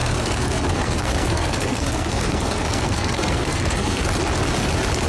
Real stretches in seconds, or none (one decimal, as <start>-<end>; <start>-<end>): 4.0-5.1

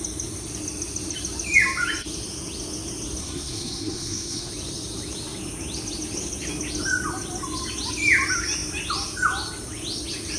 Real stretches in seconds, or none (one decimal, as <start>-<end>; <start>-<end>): 0.0-3.2; 4.5-10.4

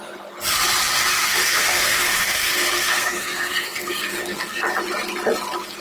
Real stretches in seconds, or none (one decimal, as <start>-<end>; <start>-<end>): 0.0-1.2; 4.6-5.8

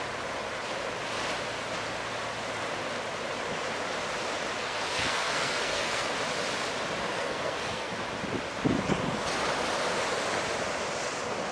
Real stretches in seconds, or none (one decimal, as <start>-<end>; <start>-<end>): 0.0-4.6; 6.1-7.1; 7.9-11.5

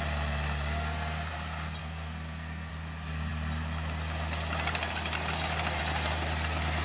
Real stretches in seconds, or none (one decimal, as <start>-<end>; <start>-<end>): 0.0-1.8; 2.7-6.8

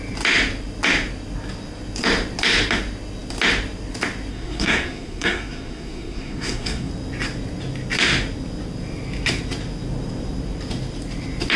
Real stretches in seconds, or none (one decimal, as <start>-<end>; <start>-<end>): 0.0-4.3; 6.9-11.6